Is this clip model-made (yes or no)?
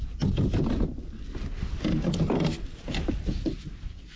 no